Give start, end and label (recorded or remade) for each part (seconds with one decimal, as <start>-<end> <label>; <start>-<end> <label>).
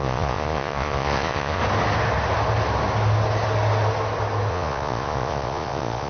0.0-1.6 remade; 1.6-4.5 recorded; 4.5-6.1 remade